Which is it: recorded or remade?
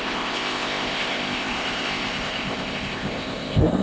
remade